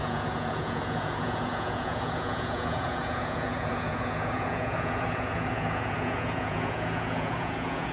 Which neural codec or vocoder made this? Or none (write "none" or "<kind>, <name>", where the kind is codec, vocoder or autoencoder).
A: vocoder, Vocos